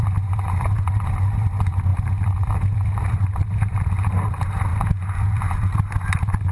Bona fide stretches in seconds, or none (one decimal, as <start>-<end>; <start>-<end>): 4.7-6.5